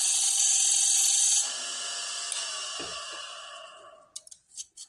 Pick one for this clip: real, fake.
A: real